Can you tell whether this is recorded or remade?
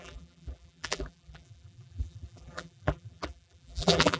remade